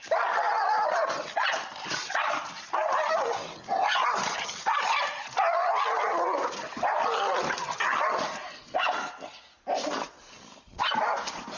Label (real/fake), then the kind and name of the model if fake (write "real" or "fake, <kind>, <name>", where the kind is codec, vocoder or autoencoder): real